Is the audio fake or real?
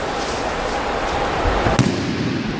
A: real